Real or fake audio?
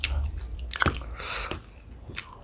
real